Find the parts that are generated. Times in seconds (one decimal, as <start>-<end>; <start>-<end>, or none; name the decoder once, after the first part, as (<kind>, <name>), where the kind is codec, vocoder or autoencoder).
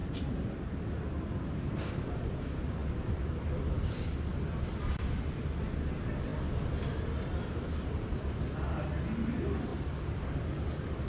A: 0.0-0.7 (vocoder, BigVGAN v2)